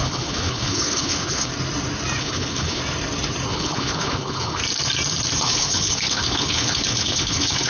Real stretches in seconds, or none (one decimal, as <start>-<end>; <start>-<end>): 1.5-2.2; 2.8-3.5; 4.6-5.4